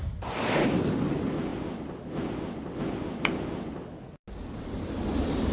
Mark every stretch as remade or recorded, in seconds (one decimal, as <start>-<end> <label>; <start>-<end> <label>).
0.0-5.5 recorded